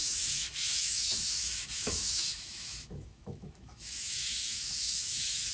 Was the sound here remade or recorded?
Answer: remade